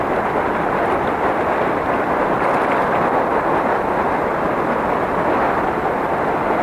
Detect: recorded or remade recorded